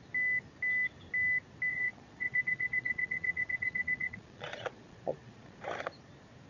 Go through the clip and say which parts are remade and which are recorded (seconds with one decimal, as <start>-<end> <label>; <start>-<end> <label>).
0.0-1.7 recorded; 1.7-5.6 remade; 5.6-6.5 recorded